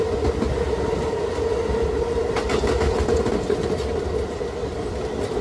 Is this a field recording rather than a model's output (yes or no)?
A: yes